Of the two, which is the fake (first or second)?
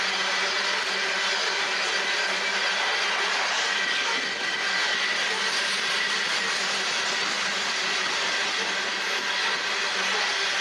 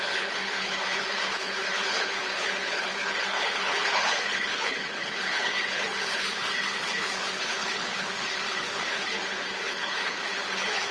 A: second